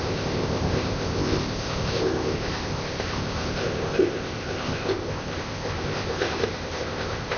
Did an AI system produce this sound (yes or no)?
yes